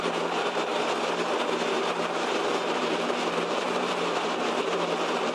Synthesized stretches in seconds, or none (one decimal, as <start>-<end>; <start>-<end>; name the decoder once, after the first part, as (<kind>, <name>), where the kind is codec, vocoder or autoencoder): 0.0-0.7 (vocoder, BigVGAN v2); 1.7-5.3